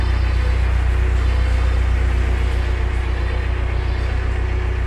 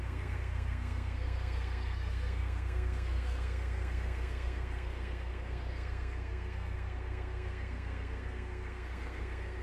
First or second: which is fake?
second